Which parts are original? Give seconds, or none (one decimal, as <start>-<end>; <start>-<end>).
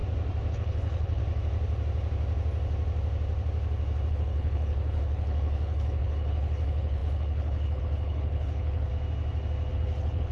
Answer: 0.0-0.5; 1.2-4.1; 8.9-9.7